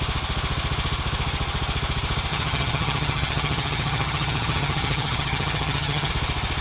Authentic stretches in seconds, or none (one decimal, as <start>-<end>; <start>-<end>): 0.0-2.3; 6.1-6.6